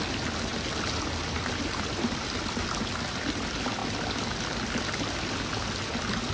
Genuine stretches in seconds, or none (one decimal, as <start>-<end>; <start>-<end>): 0.0-6.3